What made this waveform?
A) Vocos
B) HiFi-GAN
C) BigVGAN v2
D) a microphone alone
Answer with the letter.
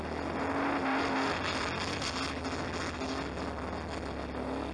D